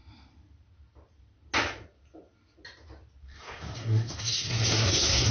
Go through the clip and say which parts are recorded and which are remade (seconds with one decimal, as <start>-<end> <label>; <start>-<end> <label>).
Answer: 0.0-3.2 recorded; 3.2-5.3 remade